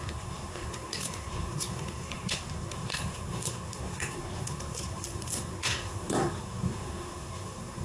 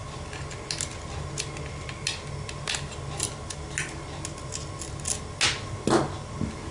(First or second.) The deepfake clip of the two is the first